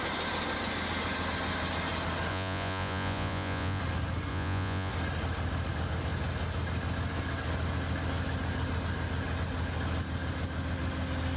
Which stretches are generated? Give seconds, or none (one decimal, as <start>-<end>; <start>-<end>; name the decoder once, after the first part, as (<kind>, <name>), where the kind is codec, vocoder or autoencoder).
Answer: 2.3-3.8 (vocoder, Vocos); 4.3-4.9